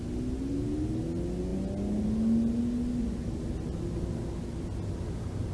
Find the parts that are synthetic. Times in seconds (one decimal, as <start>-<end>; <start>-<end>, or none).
none